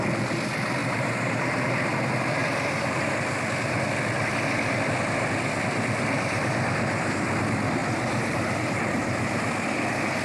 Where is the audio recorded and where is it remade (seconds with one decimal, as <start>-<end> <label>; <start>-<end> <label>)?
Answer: 0.0-0.8 recorded; 0.8-1.8 remade; 1.8-2.4 recorded; 2.4-3.1 remade; 3.1-10.2 recorded